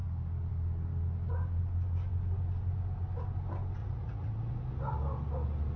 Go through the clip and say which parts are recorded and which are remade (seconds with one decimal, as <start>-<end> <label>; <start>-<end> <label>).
0.0-3.8 recorded; 3.8-4.3 remade; 4.3-5.8 recorded